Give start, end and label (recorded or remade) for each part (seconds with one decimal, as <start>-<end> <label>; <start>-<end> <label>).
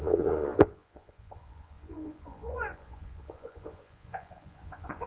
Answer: 0.0-5.1 remade